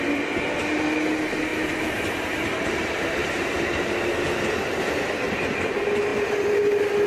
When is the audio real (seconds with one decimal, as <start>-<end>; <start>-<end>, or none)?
0.0-1.5; 3.9-7.1